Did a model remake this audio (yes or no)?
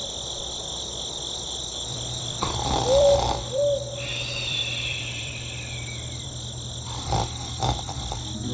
yes